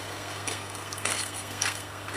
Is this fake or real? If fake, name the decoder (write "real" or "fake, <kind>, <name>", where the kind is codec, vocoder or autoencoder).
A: fake, codec, SNAC